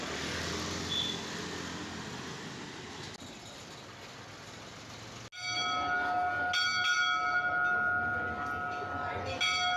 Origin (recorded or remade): recorded